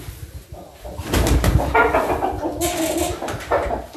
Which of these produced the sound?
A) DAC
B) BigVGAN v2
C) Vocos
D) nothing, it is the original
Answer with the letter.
D